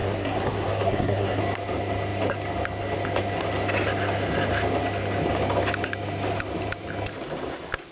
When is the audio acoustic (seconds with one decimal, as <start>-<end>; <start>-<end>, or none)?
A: 1.4-7.9